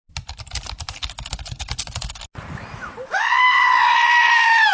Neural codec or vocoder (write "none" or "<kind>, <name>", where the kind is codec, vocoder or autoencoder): none